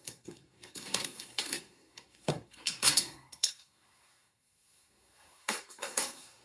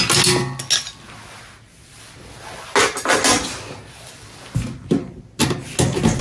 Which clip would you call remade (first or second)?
first